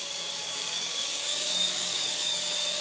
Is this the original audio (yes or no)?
no